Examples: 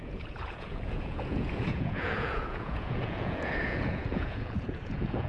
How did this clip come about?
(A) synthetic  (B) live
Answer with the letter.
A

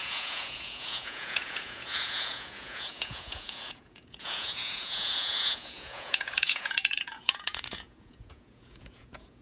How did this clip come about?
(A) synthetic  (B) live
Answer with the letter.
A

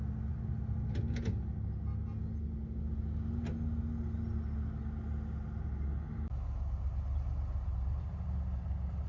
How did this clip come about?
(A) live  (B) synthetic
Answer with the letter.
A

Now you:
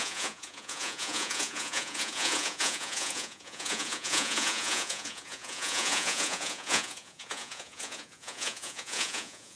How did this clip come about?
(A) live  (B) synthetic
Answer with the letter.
B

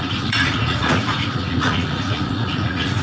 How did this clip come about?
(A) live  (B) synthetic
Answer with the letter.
B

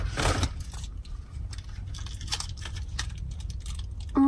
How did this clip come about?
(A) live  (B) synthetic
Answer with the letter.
A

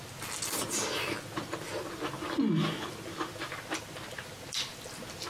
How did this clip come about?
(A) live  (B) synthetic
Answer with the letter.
A